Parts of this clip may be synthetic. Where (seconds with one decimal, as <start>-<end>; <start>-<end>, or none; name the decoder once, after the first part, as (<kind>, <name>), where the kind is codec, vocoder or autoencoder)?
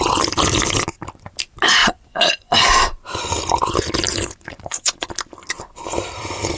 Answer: 1.8-2.7 (vocoder, Vocos); 4.1-5.1